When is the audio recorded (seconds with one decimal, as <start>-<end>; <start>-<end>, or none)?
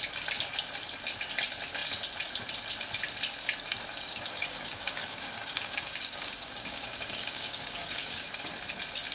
0.0-3.9; 8.3-9.1